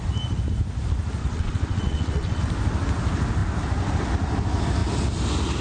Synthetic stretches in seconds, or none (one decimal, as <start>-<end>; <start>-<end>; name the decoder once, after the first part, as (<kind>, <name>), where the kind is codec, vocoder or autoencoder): 1.2-2.4 (vocoder, WaveNeXt)